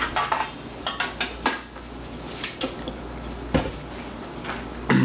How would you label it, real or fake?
real